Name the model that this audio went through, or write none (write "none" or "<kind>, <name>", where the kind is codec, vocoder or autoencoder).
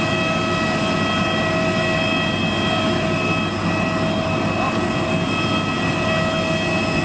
none